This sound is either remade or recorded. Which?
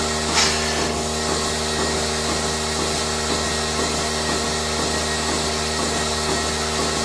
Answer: recorded